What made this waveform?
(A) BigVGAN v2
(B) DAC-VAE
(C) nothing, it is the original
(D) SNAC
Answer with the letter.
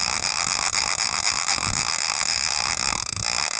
B